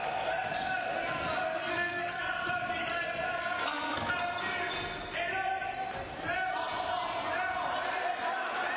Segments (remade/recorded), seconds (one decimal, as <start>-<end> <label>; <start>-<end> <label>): 0.0-1.6 recorded; 1.6-2.2 remade; 2.2-3.4 recorded; 3.4-4.1 remade; 4.1-8.8 recorded